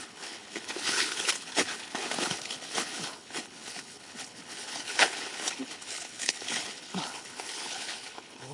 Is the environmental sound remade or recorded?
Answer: remade